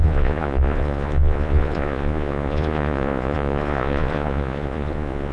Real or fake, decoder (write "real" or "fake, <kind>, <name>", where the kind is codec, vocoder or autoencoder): fake, vocoder, Vocos